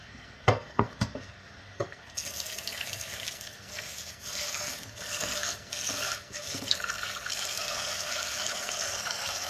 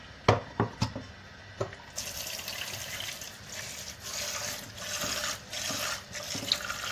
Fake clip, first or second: first